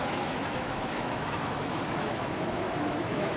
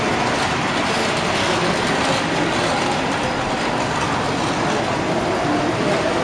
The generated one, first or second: first